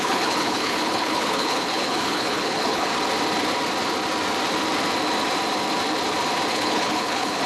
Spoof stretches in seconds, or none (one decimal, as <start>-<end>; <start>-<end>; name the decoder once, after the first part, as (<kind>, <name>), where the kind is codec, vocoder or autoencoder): 0.0-2.9 (codec, HILCodec); 6.5-7.5